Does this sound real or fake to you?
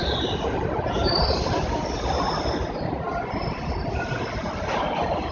fake